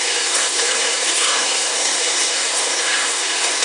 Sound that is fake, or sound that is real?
fake